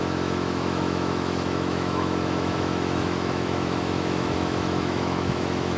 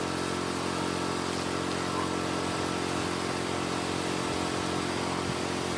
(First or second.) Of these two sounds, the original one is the second